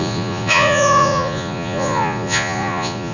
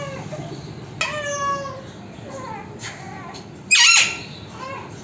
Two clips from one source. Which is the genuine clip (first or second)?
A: second